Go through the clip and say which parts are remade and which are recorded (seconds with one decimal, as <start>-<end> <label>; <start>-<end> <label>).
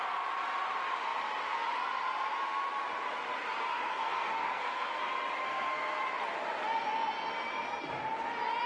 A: 0.0-3.9 recorded; 3.9-5.0 remade; 5.0-5.4 recorded; 5.4-6.0 remade; 6.0-8.7 recorded